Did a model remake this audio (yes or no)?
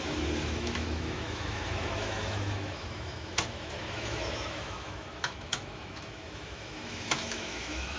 yes